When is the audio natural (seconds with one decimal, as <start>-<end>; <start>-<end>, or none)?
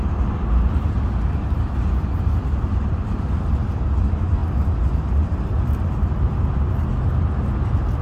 0.0-8.0